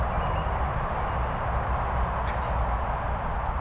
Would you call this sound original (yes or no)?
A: yes